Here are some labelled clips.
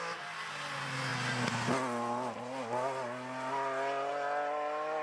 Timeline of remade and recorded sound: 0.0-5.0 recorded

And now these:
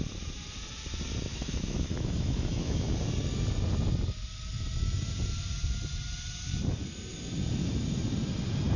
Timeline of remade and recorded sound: 0.0-1.3 recorded; 1.3-3.0 remade; 3.0-8.8 recorded

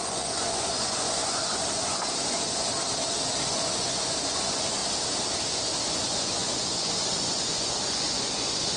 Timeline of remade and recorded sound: 0.0-2.7 remade; 2.7-3.5 recorded; 3.5-4.8 remade; 4.8-5.5 recorded; 5.5-8.8 remade

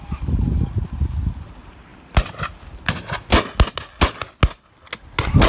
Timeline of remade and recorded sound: 0.0-5.5 recorded

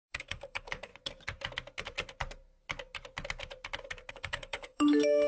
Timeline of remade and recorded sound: 0.0-0.9 remade; 0.9-4.1 recorded; 4.1-5.3 remade

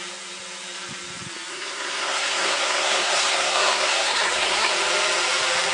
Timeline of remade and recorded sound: 0.0-1.5 recorded; 1.5-4.7 remade; 4.7-5.7 recorded

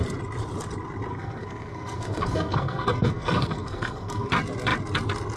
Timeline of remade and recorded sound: 0.0-1.1 recorded; 1.1-4.3 remade; 4.3-5.4 recorded

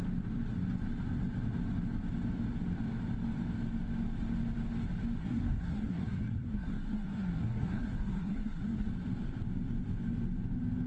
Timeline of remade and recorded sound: 0.0-5.2 recorded; 5.2-8.9 remade; 8.9-10.9 recorded